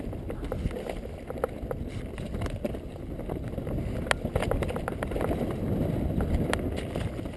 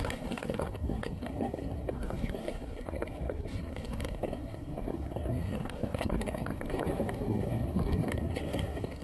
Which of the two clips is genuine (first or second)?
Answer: first